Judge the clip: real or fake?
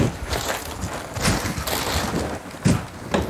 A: real